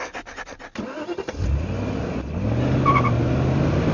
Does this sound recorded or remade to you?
recorded